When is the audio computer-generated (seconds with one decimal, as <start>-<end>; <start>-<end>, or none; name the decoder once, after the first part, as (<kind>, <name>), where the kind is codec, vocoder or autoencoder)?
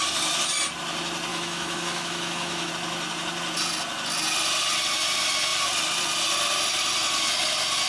1.3-2.7 (autoencoder, DAC-VAE)